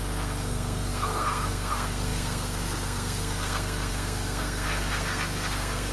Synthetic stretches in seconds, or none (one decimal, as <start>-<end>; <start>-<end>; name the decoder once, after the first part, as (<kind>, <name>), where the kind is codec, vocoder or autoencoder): 0.0-5.9 (codec, SNAC)